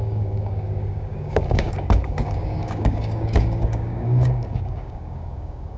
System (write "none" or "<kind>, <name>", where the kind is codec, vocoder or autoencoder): codec, DAC